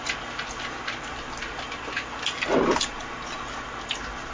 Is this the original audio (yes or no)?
yes